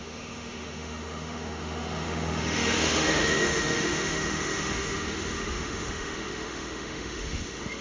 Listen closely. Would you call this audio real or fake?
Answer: fake